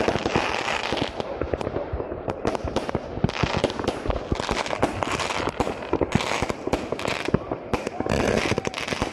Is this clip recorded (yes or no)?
yes